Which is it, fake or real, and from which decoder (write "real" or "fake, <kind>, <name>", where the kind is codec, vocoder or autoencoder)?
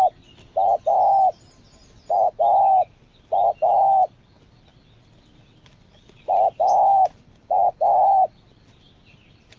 real